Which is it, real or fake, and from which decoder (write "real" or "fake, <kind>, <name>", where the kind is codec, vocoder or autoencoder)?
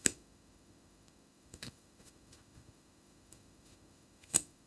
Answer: fake, autoencoder, DAC-VAE